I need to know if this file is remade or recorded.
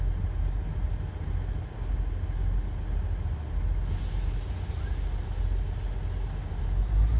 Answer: recorded